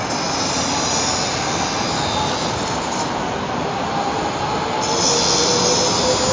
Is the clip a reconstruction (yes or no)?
no